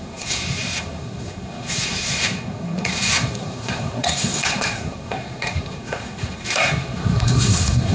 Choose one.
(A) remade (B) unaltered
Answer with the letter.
A